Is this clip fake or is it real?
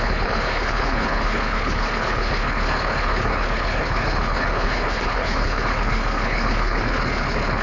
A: fake